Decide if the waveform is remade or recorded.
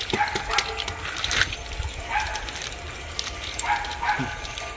recorded